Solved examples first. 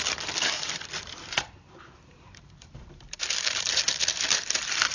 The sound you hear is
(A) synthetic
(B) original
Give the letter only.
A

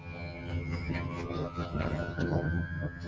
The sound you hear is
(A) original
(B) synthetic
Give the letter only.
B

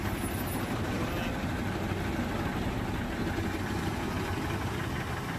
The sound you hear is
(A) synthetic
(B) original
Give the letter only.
B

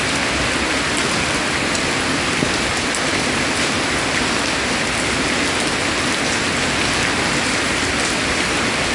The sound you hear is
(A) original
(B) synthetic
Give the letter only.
A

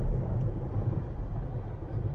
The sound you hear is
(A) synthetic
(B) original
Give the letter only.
B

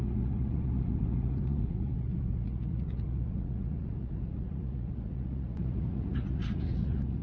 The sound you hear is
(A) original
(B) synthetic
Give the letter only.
B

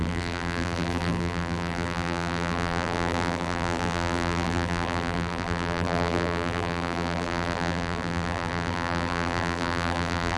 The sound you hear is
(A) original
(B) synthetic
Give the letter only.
B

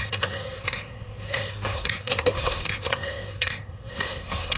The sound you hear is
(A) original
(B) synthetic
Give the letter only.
B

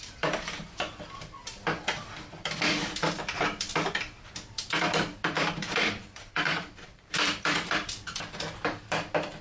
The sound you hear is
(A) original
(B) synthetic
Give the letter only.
B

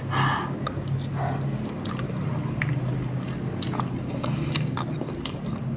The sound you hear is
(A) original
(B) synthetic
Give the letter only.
A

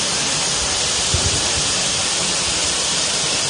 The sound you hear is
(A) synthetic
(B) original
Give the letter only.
B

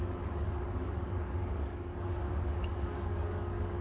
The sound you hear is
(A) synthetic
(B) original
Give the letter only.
A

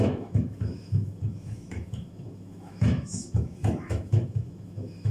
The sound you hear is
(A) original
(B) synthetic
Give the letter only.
B